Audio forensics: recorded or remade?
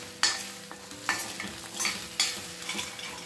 recorded